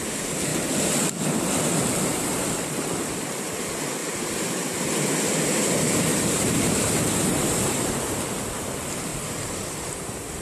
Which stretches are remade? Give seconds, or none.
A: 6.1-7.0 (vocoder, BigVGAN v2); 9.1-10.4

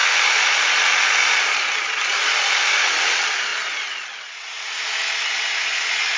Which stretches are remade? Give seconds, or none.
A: none